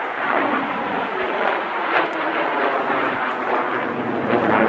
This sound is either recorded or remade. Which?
remade